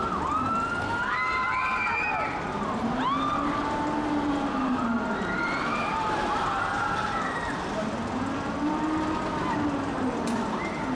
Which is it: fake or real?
real